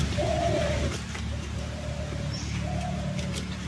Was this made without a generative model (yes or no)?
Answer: yes